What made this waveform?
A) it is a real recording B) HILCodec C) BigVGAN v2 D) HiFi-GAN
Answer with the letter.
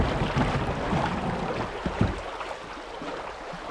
A